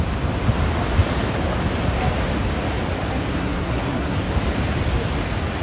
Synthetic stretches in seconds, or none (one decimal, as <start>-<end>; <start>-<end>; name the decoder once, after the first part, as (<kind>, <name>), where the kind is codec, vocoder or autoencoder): 3.3-4.3 (codec, SNAC)